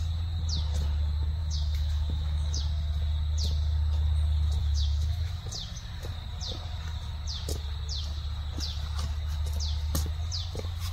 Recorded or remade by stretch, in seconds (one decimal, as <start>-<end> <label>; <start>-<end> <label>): 0.0-1.4 recorded; 1.4-2.6 remade; 2.6-4.6 recorded; 4.6-5.4 remade; 5.4-10.9 recorded

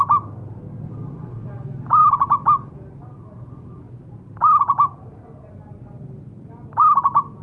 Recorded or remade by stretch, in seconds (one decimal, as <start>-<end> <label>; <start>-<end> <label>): 0.0-7.4 recorded